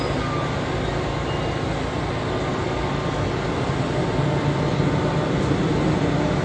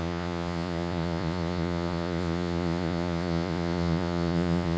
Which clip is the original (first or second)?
first